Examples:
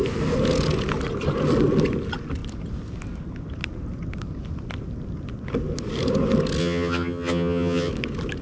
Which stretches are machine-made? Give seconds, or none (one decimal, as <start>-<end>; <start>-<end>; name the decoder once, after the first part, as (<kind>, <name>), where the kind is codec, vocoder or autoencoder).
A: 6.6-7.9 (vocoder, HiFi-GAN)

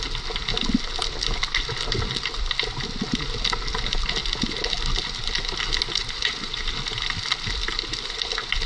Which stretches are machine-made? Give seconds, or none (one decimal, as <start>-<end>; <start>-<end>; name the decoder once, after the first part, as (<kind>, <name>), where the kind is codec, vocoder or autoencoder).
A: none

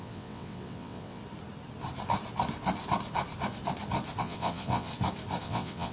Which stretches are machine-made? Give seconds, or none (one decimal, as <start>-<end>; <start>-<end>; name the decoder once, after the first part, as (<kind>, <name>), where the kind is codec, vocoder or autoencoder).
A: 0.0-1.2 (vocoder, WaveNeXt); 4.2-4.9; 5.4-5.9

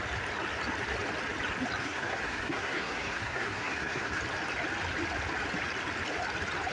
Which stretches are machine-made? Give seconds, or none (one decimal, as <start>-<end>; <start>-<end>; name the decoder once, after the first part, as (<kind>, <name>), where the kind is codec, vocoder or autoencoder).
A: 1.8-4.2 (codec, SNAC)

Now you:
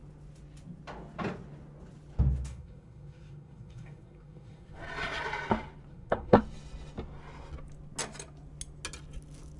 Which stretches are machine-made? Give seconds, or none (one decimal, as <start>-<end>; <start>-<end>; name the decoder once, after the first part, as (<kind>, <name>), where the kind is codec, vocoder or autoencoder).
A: 2.5-4.8 (codec, SNAC); 5.9-6.4